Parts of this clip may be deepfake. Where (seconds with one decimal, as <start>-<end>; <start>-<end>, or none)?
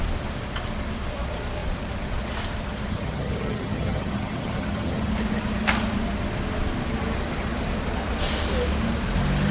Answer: 2.9-5.1